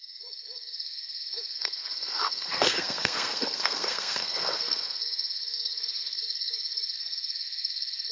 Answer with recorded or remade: remade